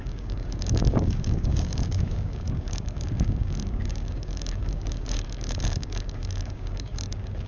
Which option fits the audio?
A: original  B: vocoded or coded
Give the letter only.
B